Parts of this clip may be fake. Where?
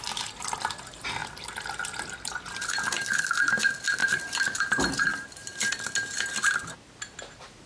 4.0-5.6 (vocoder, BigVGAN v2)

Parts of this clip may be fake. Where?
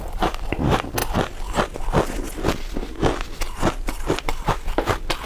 0.0-1.0 (vocoder, BigVGAN v2); 4.2-5.3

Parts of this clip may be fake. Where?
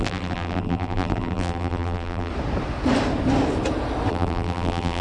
0.0-2.3 (vocoder, BigVGAN v2); 4.1-5.0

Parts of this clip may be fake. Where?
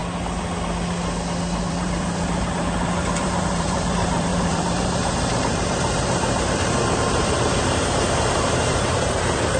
1.6-9.6 (vocoder, BigVGAN v2)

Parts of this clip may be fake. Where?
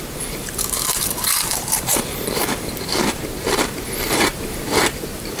0.0-5.4 (vocoder, BigVGAN v2)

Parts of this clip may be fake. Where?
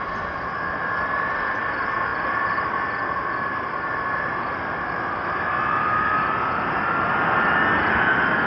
0.0-8.5 (vocoder, BigVGAN v2)